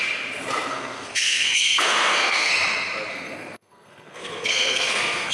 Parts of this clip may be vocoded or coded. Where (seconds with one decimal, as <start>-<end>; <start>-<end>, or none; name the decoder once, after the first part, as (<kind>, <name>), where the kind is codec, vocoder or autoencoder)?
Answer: 0.7-2.5 (codec, SNAC); 3.1-5.3